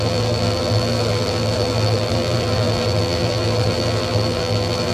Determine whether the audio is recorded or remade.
remade